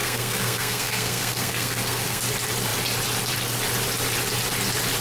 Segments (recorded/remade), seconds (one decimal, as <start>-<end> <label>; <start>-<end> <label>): 0.0-2.2 remade; 2.2-5.0 recorded